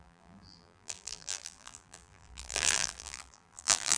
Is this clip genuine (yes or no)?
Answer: no